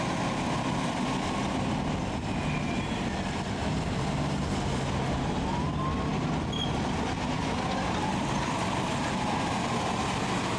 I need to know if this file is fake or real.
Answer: real